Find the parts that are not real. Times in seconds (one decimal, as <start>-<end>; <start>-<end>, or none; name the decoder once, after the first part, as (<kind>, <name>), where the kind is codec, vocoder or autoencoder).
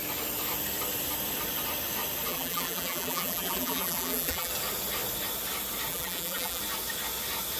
2.3-4.5 (vocoder, BigVGAN v2); 5.9-6.6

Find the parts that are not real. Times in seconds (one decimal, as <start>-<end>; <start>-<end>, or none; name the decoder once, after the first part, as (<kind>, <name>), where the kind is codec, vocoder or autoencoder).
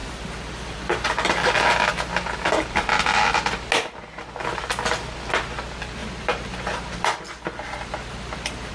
0.0-1.1 (vocoder, BigVGAN v2); 6.0-8.7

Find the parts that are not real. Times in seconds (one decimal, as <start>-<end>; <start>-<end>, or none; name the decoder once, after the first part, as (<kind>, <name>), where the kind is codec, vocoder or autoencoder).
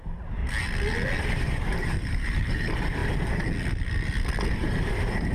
0.0-0.4 (vocoder, BigVGAN v2); 1.2-3.0; 4.5-5.3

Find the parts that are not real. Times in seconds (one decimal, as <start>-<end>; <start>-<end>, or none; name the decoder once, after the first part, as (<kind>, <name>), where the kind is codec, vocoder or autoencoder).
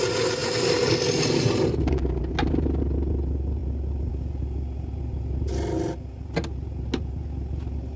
0.4-1.9 (vocoder, BigVGAN v2)